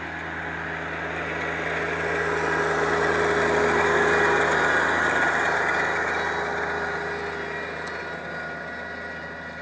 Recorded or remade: recorded